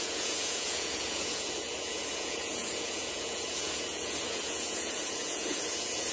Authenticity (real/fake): fake